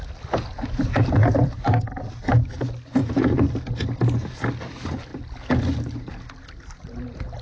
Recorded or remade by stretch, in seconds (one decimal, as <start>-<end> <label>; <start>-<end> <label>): 0.0-7.4 recorded